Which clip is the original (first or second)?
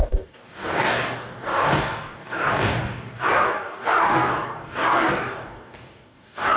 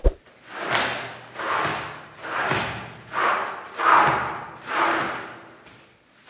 second